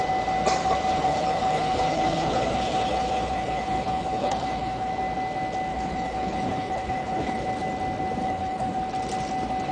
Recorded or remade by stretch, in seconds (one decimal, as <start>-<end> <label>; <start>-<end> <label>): 0.0-0.9 recorded; 0.9-4.9 remade; 4.9-5.7 recorded; 5.7-7.5 remade; 7.5-8.2 recorded; 8.2-8.7 remade; 8.7-9.7 recorded